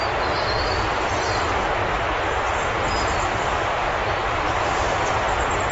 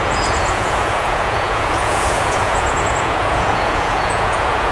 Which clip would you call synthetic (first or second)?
second